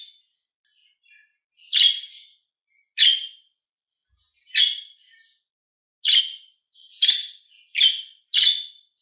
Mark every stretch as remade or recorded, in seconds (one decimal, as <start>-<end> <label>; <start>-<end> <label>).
0.0-9.0 recorded